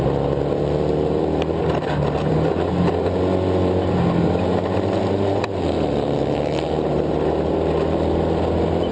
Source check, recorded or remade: recorded